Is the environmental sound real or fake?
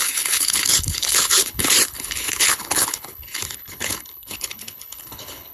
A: fake